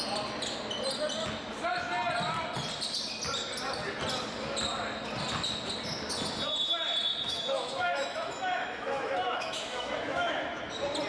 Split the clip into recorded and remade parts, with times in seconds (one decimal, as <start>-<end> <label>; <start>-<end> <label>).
0.0-7.1 recorded; 7.1-10.6 remade; 10.6-11.1 recorded